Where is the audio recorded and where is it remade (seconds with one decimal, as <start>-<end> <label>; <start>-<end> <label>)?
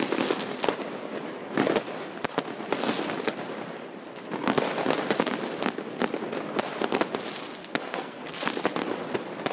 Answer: 0.0-7.6 recorded; 7.6-8.5 remade; 8.5-9.5 recorded